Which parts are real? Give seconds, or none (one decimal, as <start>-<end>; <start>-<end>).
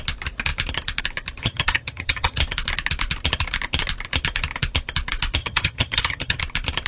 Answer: 0.0-1.4; 2.4-5.4; 6.4-6.9